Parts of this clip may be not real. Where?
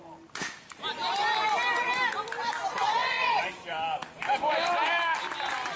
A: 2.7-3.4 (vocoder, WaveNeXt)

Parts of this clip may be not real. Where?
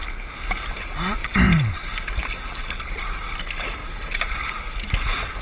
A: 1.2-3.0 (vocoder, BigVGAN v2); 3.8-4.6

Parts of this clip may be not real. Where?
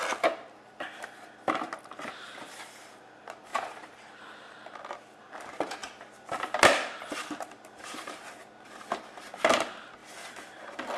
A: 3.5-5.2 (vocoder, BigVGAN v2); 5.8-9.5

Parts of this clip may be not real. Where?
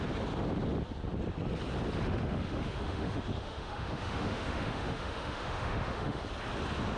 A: 2.0-6.2 (autoencoder, DAC-VAE)